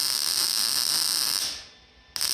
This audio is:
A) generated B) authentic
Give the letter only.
B